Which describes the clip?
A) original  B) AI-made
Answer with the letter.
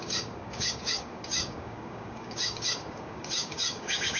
B